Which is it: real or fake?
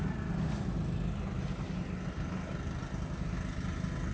real